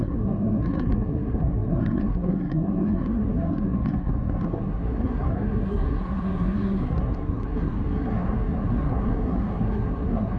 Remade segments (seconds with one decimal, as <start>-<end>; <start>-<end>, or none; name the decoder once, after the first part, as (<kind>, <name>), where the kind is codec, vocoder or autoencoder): 0.0-10.4 (codec, SNAC)